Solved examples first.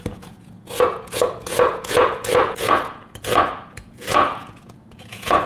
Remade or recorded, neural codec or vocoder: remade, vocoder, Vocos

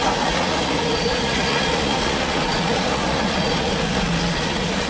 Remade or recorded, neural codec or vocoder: remade, vocoder, Vocos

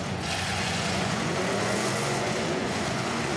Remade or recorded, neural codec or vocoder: remade, vocoder, Vocos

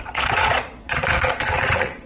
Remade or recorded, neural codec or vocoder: remade, vocoder, Vocos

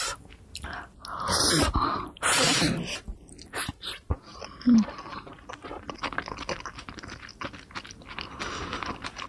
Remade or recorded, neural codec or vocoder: recorded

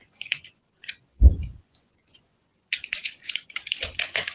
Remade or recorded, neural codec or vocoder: remade, vocoder, Vocos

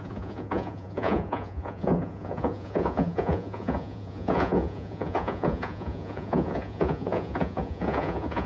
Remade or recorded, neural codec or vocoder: remade, vocoder, Vocos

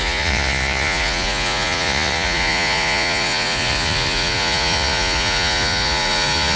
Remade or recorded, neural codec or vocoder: remade, vocoder, Vocos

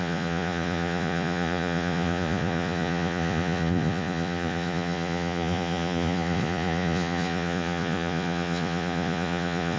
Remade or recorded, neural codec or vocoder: remade, vocoder, Vocos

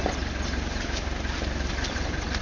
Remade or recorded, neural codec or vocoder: recorded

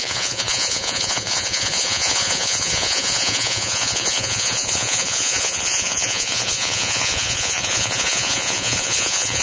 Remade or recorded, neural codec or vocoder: remade, vocoder, Vocos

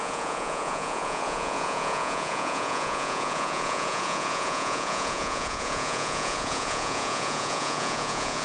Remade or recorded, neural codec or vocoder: remade, vocoder, Vocos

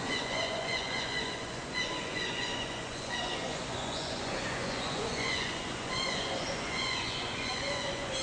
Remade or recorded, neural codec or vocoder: remade, vocoder, Vocos